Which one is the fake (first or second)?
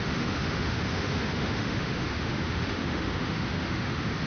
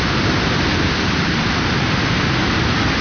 first